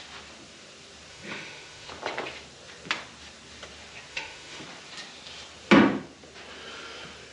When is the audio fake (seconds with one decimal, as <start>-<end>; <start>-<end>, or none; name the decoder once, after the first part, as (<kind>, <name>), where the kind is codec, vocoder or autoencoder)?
1.1-1.9 (autoencoder, DAC-VAE); 4.1-4.6